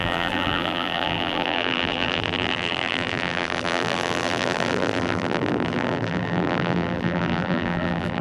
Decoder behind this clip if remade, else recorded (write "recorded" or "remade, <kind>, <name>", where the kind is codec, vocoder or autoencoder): remade, vocoder, BigVGAN v2